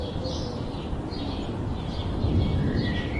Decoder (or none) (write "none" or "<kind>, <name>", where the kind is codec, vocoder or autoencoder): none